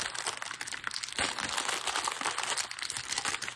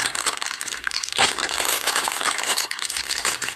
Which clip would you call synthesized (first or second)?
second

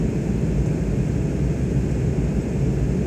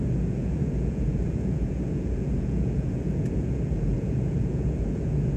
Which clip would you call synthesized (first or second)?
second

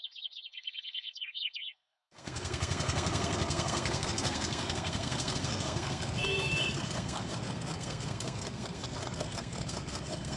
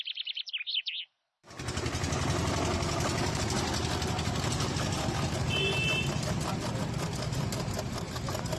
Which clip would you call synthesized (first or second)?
first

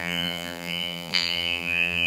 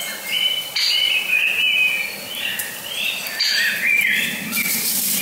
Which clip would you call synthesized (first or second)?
first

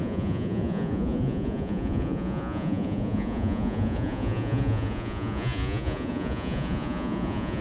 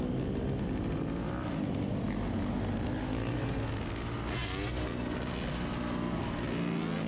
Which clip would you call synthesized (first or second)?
first